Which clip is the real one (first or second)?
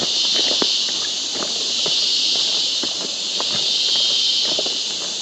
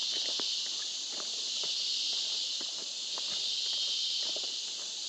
first